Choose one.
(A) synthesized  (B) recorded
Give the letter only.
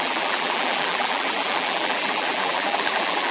A